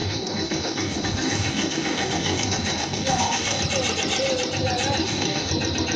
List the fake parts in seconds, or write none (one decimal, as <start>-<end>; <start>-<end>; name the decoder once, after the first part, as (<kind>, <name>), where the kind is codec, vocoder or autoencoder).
0.0-3.6 (codec, DAC); 5.0-5.5